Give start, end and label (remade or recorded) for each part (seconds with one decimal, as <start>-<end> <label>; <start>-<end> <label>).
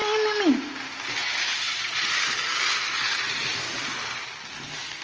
0.0-1.2 recorded; 1.2-2.1 remade; 2.1-5.0 recorded